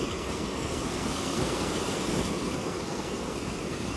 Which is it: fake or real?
fake